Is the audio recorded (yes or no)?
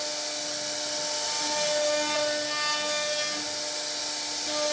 yes